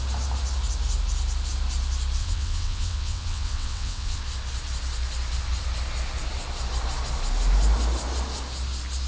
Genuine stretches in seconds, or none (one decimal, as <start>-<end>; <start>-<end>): 0.0-2.2; 4.2-9.1